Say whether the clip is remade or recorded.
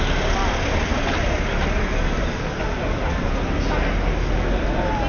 recorded